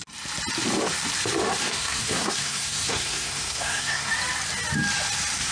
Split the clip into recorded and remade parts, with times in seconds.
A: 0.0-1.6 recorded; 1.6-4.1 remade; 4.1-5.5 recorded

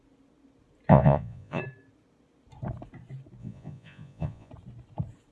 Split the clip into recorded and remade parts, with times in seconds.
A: 0.0-0.9 recorded; 0.9-1.6 remade; 1.6-3.4 recorded; 3.4-4.5 remade; 4.5-5.3 recorded

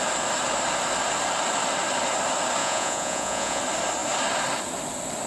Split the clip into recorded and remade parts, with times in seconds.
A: 0.0-2.6 recorded; 2.6-3.6 remade; 3.6-5.3 recorded

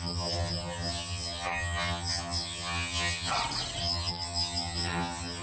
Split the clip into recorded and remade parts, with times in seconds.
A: 0.0-3.3 remade; 3.3-3.8 recorded; 3.8-5.4 remade

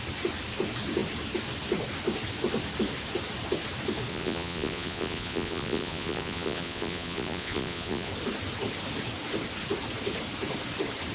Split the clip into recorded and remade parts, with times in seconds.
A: 0.0-4.1 recorded; 4.1-8.1 remade; 8.1-11.1 recorded

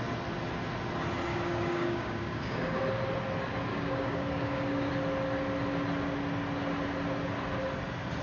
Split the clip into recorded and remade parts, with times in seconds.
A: 0.0-1.3 recorded; 1.3-2.8 remade; 2.8-3.7 recorded; 3.7-4.9 remade; 4.9-8.2 recorded

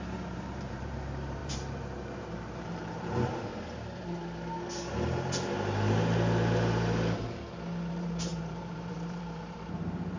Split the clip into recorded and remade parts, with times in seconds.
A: 0.0-3.5 remade; 3.5-7.9 recorded; 7.9-10.2 remade

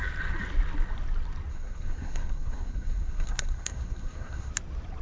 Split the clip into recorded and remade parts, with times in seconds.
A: 0.0-1.5 recorded; 1.5-4.5 remade; 4.5-5.0 recorded